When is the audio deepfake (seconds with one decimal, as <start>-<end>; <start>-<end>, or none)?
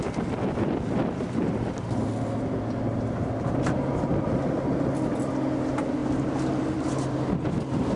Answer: none